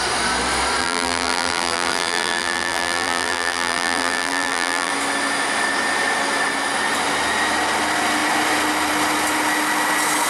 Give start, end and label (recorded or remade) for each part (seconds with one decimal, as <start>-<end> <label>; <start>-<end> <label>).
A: 0.0-0.8 recorded; 0.8-4.9 remade; 4.9-10.3 recorded